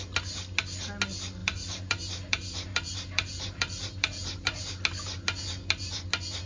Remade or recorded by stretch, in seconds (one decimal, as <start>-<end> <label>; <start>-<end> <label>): 0.0-1.4 recorded; 1.4-4.8 remade; 4.8-6.5 recorded